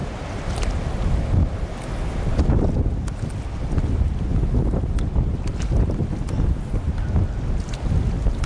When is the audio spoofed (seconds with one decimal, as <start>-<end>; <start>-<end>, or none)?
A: none